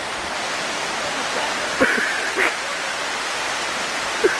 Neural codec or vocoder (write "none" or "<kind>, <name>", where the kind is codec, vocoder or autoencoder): none